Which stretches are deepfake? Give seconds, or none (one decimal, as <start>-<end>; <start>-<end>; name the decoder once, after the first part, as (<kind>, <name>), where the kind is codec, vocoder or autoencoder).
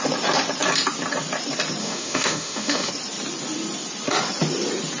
1.8-2.9 (autoencoder, DAC-VAE)